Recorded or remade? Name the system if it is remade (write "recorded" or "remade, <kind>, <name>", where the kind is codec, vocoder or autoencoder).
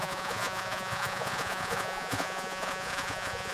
remade, vocoder, Vocos